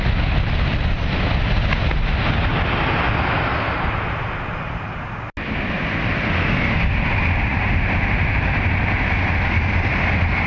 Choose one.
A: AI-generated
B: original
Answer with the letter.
B